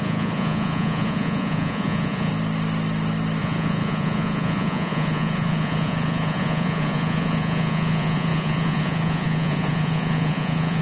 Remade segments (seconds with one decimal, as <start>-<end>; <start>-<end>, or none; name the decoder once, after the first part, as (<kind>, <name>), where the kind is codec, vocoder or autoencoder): 0.0-2.3 (vocoder, Vocos); 3.4-10.8